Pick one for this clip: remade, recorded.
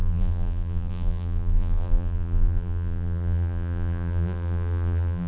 remade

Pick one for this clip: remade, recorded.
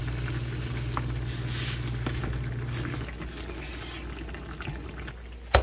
recorded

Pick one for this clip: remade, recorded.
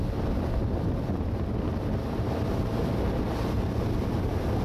recorded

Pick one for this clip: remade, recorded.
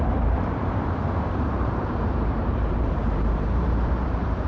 remade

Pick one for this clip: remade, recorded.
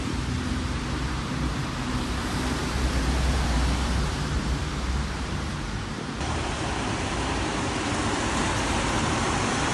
remade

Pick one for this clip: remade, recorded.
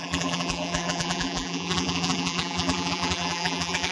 remade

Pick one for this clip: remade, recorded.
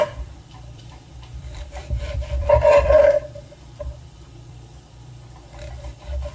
remade